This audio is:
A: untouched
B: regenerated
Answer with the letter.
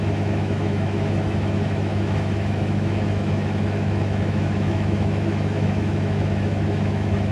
B